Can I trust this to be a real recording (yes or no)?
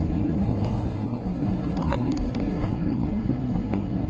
no